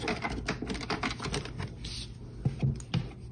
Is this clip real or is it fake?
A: real